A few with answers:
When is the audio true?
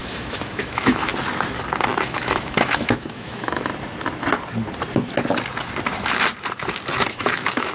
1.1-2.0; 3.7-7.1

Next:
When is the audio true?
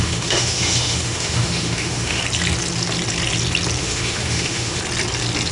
2.2-3.8; 4.8-5.5